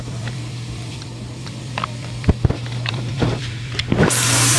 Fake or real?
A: fake